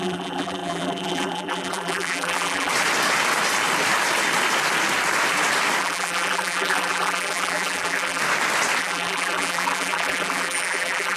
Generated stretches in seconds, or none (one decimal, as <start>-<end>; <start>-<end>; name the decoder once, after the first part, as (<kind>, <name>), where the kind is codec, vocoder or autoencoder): 0.0-2.7 (vocoder, BigVGAN v2); 5.8-8.2; 8.8-11.2